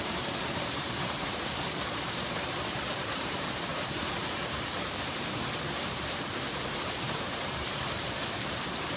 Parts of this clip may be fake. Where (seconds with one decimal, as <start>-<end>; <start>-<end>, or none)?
0.0-9.0